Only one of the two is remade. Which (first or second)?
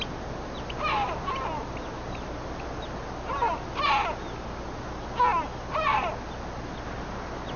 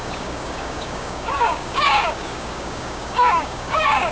second